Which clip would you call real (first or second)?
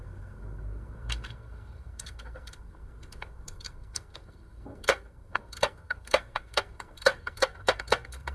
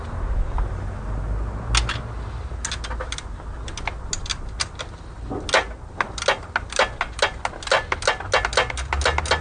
second